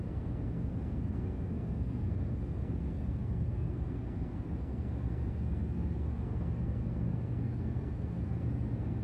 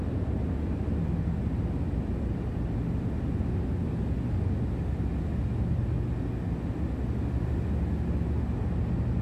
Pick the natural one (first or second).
second